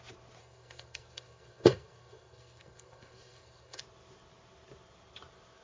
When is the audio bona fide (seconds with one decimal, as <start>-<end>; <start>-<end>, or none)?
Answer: 0.0-0.4; 3.8-5.6